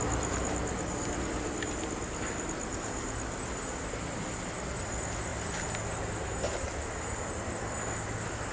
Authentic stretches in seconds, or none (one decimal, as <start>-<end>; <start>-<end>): 0.0-8.5